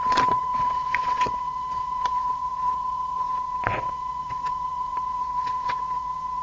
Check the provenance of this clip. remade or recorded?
remade